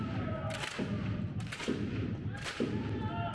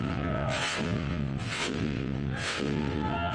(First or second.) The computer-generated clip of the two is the second